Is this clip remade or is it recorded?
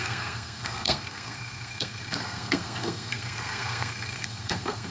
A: remade